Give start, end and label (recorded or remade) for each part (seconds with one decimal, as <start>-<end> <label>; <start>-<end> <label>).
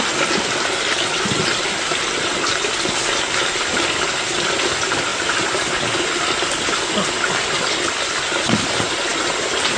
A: 0.0-5.1 recorded; 5.1-6.0 remade; 6.0-9.8 recorded